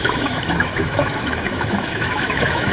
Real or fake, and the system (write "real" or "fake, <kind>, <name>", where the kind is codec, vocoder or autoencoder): fake, autoencoder, DAC-VAE